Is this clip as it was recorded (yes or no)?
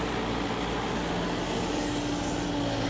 yes